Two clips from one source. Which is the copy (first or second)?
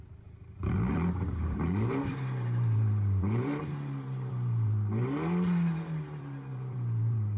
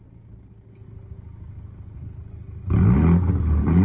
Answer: first